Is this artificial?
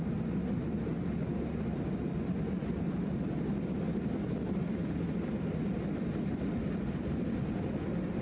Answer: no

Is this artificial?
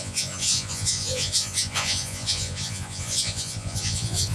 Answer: yes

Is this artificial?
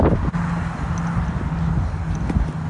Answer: no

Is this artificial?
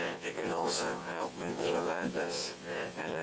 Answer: yes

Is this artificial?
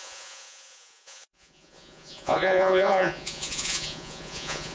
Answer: yes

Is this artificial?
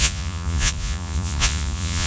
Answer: yes